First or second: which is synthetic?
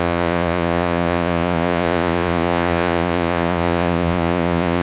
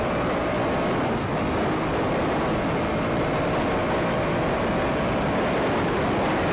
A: first